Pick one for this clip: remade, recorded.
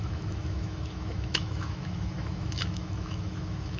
remade